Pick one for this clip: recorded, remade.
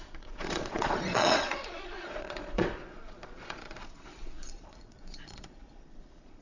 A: remade